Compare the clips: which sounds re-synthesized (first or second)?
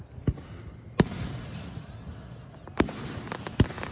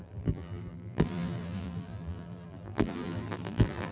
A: second